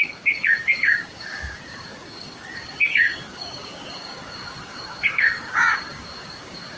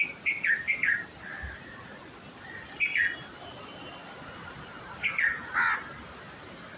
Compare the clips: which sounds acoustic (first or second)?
second